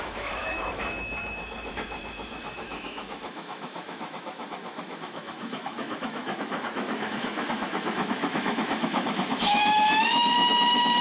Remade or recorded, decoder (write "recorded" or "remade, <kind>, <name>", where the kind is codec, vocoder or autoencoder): remade, autoencoder, DAC-VAE